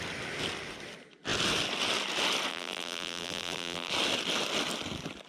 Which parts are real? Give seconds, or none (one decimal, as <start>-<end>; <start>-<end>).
0.0-2.5; 3.9-5.3